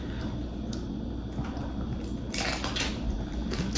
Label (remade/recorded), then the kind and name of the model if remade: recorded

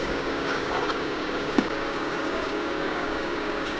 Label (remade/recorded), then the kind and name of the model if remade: remade, codec, DAC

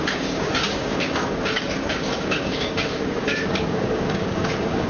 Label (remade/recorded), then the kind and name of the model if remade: remade, codec, DAC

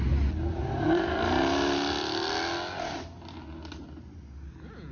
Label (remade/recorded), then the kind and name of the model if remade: recorded